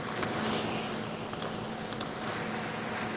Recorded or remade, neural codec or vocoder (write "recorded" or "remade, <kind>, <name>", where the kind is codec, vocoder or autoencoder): recorded